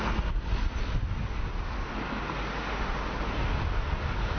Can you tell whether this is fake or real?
real